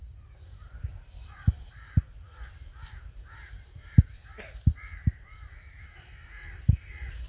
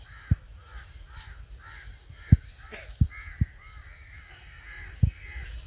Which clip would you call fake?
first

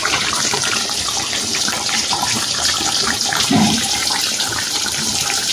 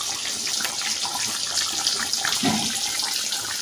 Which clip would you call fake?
first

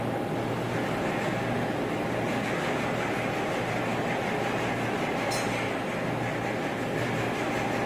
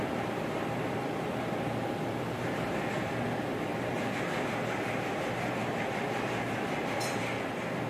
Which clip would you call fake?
second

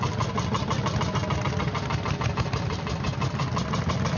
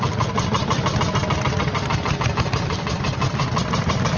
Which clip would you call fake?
second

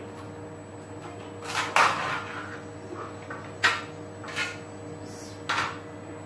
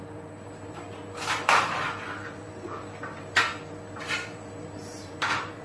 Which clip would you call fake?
second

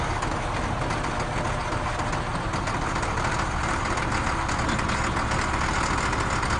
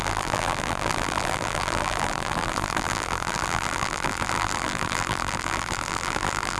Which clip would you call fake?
second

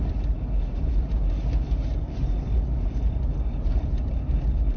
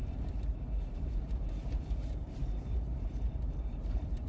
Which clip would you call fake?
second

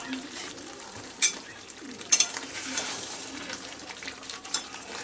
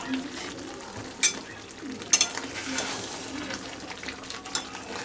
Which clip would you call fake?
first